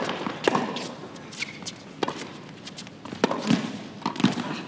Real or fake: real